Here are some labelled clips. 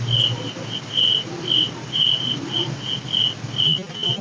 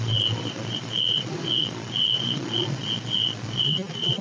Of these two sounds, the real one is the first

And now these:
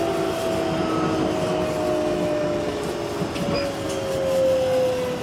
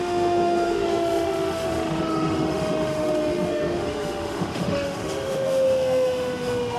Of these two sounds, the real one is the first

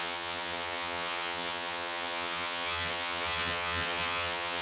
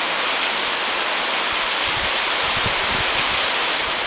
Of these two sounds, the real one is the second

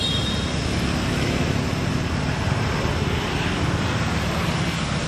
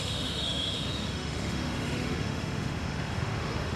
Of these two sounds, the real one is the first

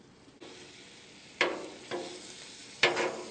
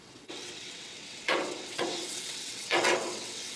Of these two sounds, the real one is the first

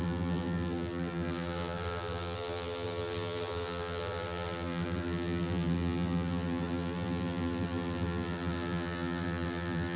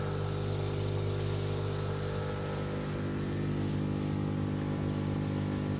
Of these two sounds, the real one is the second